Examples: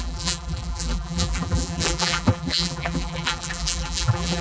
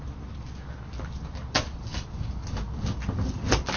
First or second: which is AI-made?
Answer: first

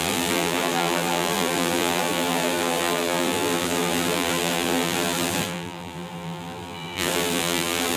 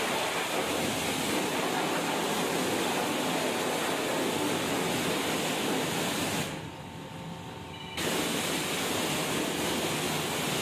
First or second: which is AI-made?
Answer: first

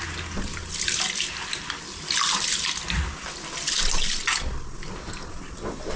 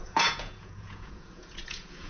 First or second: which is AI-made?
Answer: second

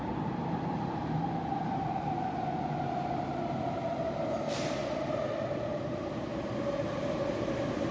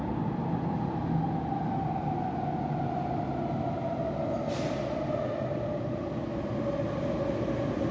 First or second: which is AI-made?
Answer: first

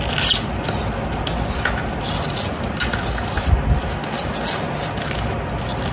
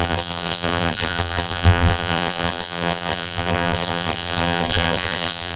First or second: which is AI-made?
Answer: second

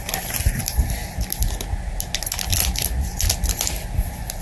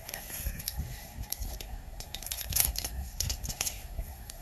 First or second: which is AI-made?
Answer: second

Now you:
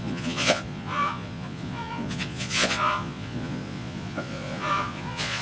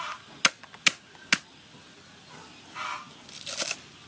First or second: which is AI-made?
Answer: first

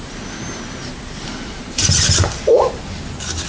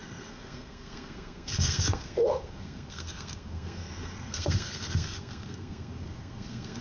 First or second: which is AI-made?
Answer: second